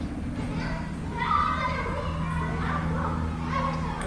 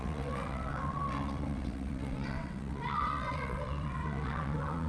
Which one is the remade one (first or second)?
second